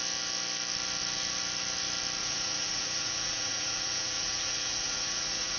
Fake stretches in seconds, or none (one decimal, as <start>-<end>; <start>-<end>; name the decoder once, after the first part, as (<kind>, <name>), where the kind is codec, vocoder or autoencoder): 2.2-5.6 (vocoder, Vocos)